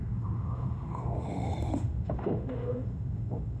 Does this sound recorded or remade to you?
remade